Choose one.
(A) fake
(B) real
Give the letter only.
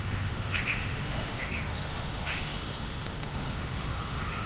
A